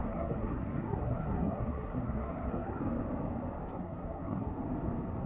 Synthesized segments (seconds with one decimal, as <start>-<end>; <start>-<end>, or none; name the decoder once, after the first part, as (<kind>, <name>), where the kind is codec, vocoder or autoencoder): 0.0-2.8 (codec, SNAC); 3.7-4.5